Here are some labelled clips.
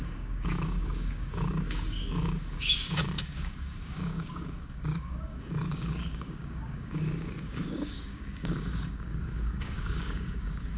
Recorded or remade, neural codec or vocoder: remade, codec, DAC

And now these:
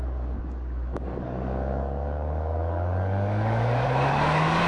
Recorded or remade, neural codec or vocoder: remade, codec, DAC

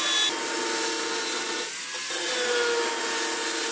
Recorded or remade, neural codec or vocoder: recorded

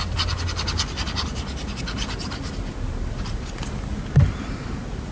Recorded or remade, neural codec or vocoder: recorded